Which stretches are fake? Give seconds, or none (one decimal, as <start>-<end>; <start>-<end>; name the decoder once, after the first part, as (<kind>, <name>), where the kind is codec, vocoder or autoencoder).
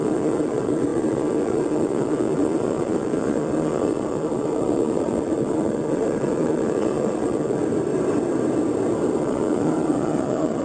0.0-7.6 (vocoder, Vocos); 9.2-10.6